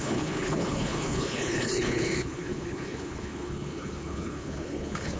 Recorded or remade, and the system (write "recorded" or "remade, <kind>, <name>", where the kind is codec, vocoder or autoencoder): remade, codec, HILCodec